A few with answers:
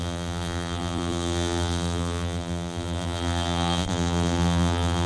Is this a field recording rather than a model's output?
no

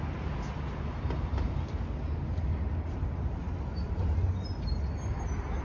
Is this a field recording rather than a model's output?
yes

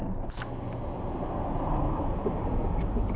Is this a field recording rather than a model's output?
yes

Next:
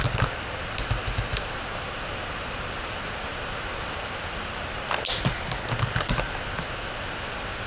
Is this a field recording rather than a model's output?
yes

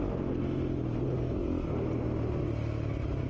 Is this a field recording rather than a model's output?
yes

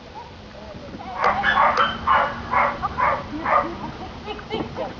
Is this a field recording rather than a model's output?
yes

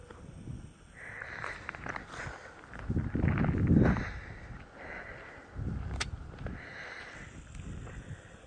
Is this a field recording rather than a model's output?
yes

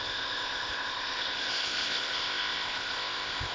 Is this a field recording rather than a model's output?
no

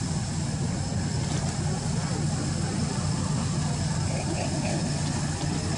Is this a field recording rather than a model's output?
yes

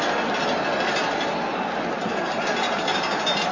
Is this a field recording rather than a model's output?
yes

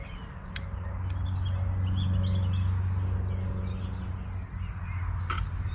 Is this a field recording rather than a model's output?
yes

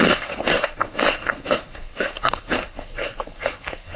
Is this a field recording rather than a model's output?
no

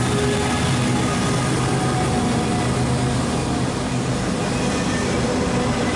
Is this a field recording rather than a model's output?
yes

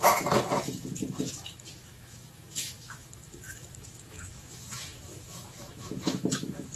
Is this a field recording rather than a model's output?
no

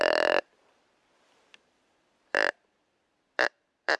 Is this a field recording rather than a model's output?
no